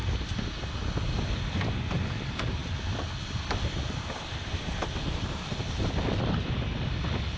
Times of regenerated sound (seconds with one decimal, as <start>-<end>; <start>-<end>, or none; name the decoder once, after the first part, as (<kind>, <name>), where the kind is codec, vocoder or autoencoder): 2.6-7.0 (vocoder, BigVGAN v2)